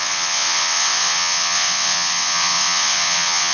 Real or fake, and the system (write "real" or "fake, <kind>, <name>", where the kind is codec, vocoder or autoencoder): fake, vocoder, WaveNeXt